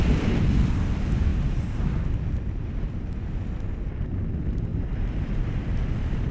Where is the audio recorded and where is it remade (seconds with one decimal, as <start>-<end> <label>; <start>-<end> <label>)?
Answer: 0.0-1.3 recorded; 1.3-1.8 remade; 1.8-4.7 recorded; 4.7-5.8 remade; 5.8-6.3 recorded